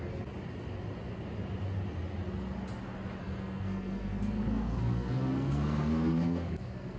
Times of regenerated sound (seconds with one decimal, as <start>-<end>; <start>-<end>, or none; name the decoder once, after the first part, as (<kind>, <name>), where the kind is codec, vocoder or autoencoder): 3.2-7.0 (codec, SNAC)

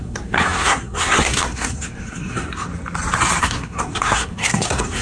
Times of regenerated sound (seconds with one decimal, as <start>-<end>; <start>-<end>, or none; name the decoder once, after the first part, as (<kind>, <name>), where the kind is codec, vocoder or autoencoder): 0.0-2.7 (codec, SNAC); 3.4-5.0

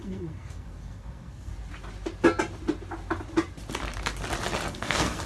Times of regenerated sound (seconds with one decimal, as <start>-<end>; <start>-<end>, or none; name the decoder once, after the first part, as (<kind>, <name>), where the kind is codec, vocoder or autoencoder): 0.0-1.5 (codec, SNAC); 4.7-5.3